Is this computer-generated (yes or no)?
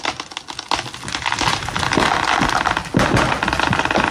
no